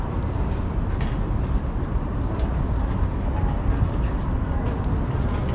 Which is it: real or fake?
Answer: real